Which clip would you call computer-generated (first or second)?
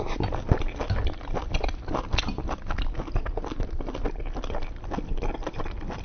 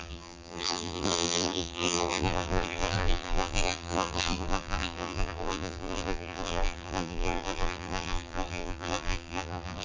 second